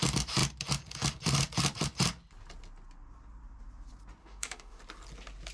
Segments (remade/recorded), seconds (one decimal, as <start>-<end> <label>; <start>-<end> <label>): 0.0-4.2 recorded; 4.2-4.8 remade; 4.8-5.5 recorded

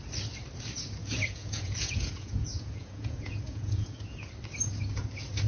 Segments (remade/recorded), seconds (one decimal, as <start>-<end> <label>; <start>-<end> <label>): 0.0-1.0 recorded; 1.0-4.3 remade; 4.3-5.5 recorded

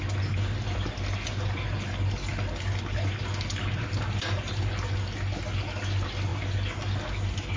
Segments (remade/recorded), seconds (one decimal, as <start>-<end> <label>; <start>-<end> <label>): 0.0-7.6 recorded

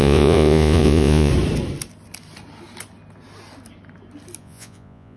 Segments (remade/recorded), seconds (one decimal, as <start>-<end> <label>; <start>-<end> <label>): 0.0-1.3 remade; 1.3-4.4 recorded; 4.4-5.2 remade

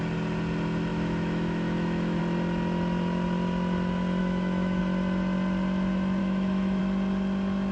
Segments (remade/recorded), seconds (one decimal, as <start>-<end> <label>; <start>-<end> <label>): 0.0-0.9 recorded; 0.9-2.2 remade; 2.2-4.2 recorded; 4.2-4.8 remade; 4.8-6.2 recorded; 6.2-6.8 remade; 6.8-7.7 recorded